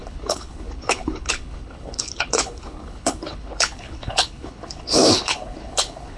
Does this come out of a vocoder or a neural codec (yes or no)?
yes